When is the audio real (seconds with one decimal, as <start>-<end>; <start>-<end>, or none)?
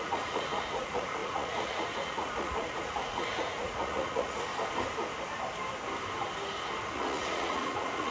4.5-6.9